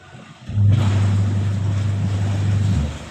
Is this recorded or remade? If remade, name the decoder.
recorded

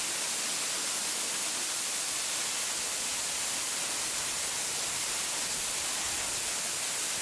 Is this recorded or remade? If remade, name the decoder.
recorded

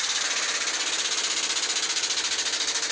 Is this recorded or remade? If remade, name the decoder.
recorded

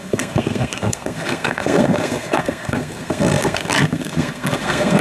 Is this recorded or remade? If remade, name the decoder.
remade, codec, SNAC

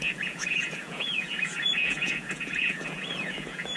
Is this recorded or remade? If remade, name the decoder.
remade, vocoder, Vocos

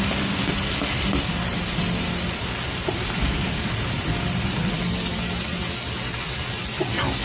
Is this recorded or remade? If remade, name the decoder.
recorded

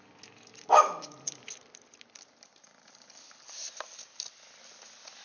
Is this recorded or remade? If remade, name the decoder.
recorded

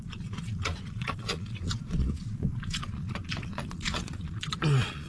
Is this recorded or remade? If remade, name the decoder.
remade, vocoder, Vocos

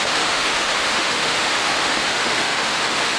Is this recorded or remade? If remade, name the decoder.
remade, autoencoder, DAC-VAE